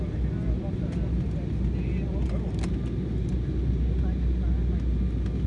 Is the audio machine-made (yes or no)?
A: no